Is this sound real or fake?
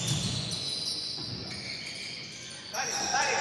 fake